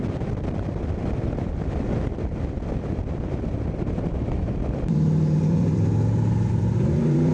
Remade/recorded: remade